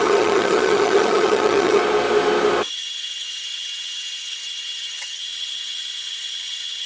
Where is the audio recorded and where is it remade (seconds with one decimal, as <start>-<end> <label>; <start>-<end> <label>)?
0.0-1.8 remade; 1.8-2.7 recorded; 2.7-6.9 remade